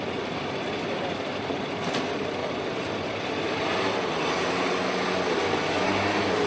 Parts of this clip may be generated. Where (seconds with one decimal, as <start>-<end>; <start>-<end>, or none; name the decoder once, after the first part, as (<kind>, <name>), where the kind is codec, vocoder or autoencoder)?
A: 2.4-2.9 (vocoder, BigVGAN v2)